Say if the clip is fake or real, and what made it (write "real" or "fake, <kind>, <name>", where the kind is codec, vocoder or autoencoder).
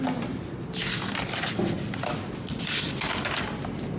real